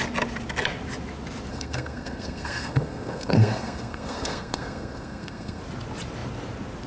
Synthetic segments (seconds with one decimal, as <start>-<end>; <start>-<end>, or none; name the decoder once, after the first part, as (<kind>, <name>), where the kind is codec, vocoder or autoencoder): 1.5-5.6 (codec, SNAC)

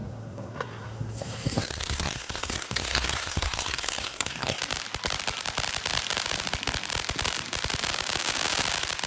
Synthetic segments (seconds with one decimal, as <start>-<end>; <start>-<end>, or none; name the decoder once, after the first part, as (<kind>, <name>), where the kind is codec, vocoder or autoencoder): 0.0-4.6 (codec, SNAC)

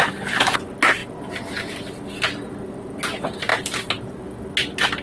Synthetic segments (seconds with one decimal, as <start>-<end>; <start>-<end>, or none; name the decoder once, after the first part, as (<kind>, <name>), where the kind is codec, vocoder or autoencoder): none